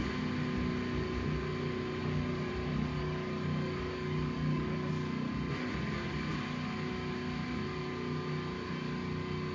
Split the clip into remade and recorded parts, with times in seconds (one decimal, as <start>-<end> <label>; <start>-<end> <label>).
0.0-2.0 recorded; 2.0-2.5 remade; 2.5-2.9 recorded; 2.9-4.9 remade; 4.9-9.5 recorded